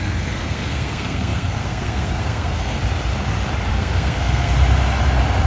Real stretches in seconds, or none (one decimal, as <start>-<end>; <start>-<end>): 2.8-3.7; 4.5-5.5

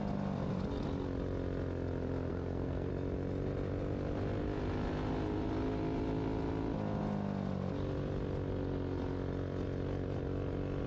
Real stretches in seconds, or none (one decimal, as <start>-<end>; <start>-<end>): 0.0-2.3; 2.9-10.9